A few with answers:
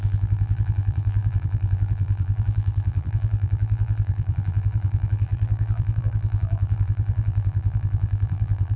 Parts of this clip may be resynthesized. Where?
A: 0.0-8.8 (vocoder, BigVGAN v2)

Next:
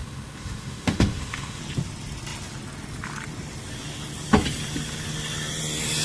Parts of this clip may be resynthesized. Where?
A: 0.0-1.6 (autoencoder, DAC-VAE)

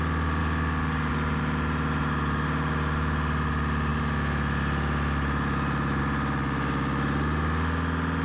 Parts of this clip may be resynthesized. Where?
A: none

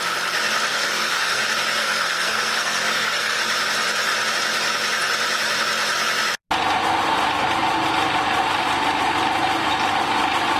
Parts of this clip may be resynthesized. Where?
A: 0.7-1.4 (codec, SNAC); 1.8-3.4

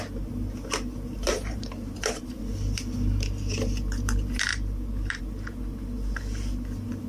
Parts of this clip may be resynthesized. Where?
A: 1.3-2.4 (vocoder, BigVGAN v2); 4.5-5.2

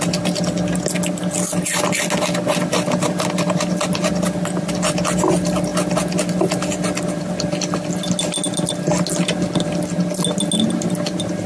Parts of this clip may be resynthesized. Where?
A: none